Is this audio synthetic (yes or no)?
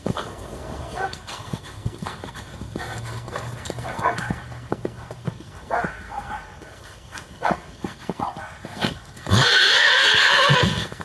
yes